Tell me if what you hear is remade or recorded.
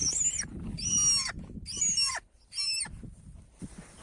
recorded